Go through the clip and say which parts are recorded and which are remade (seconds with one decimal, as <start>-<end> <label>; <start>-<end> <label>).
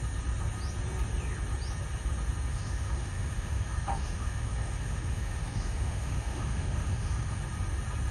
0.0-2.5 recorded; 2.5-7.4 remade; 7.4-8.1 recorded